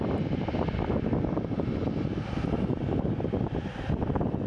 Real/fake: real